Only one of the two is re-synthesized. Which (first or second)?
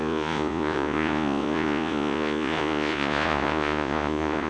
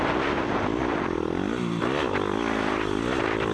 first